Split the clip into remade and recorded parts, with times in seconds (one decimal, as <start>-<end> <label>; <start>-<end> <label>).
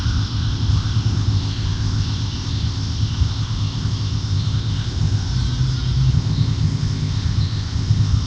0.0-5.3 remade; 5.3-6.1 recorded; 6.1-8.3 remade